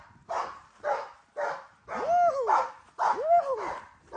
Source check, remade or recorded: recorded